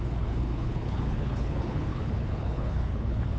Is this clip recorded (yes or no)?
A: no